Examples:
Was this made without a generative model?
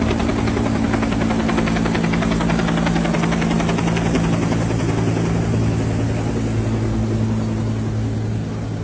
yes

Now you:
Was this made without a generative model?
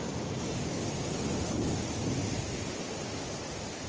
yes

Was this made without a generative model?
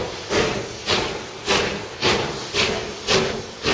yes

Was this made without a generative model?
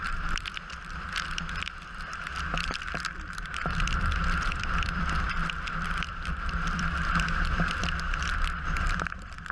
no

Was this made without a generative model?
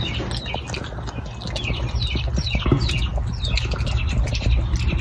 yes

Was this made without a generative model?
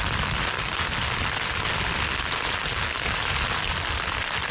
yes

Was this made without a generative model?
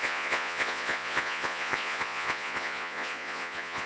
no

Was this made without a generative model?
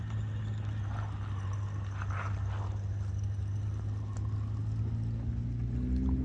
yes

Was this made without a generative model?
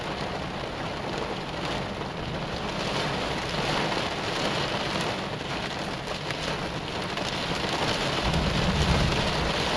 yes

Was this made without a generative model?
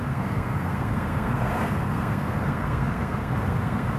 no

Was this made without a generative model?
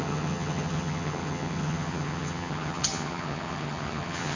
no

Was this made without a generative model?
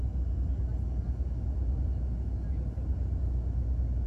yes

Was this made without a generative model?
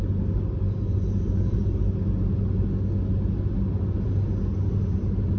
yes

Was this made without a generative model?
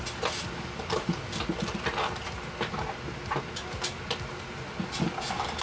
yes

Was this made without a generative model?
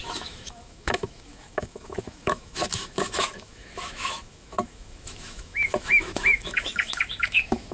no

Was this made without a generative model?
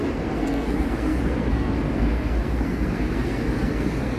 no